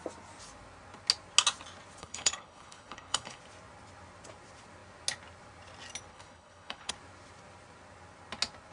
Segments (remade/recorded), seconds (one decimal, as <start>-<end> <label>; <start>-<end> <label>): 0.0-2.0 recorded; 2.0-3.4 remade; 3.4-6.1 recorded; 6.1-6.9 remade; 6.9-8.7 recorded